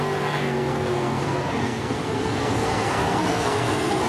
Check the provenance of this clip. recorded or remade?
remade